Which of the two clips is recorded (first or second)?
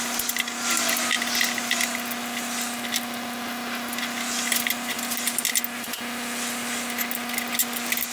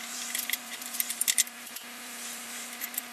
first